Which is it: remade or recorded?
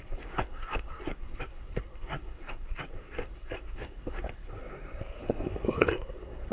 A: remade